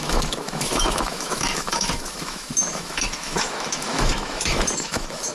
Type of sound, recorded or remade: remade